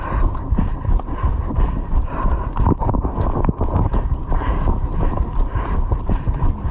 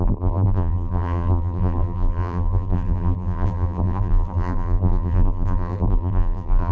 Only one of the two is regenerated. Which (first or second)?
second